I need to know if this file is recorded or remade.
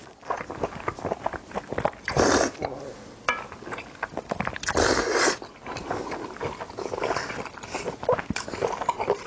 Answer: recorded